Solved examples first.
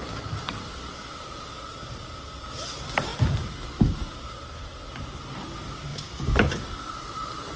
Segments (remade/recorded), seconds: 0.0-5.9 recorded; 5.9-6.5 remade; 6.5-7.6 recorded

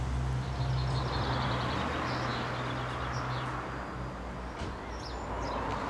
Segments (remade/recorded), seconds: 0.0-5.9 recorded

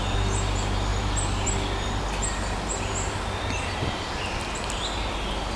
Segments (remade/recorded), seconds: 0.0-5.6 recorded

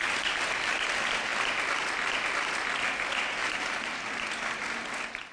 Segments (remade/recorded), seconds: 0.0-1.3 recorded; 1.3-1.9 remade; 1.9-3.4 recorded; 3.4-4.3 remade; 4.3-5.3 recorded

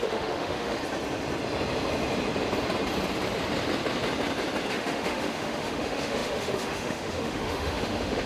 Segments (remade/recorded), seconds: 0.0-0.8 remade; 0.8-4.7 recorded; 4.7-8.3 remade

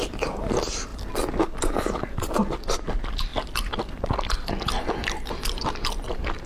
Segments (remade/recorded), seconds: 0.0-6.5 recorded

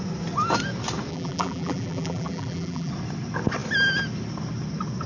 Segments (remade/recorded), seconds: 0.0-1.1 recorded; 1.1-2.9 remade; 2.9-5.1 recorded